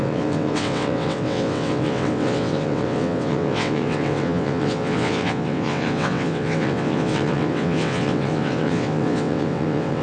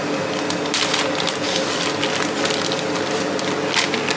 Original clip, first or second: second